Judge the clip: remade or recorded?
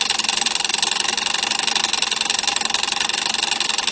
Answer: recorded